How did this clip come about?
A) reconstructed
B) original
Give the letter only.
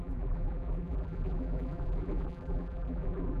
A